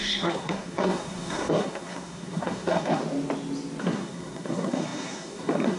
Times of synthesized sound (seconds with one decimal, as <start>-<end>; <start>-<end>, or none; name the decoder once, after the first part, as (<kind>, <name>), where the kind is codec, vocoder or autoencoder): 0.0-3.0 (codec, SNAC); 3.8-5.8